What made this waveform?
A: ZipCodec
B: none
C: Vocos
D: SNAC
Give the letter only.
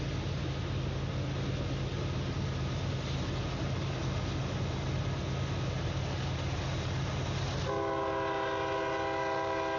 B